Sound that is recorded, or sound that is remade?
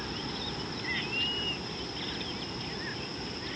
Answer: recorded